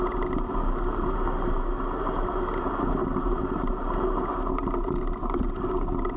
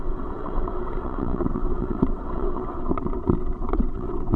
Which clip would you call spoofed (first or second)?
second